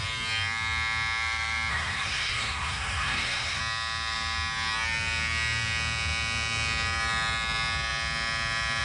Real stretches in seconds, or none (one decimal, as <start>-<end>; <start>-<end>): 0.0-1.7; 3.6-8.8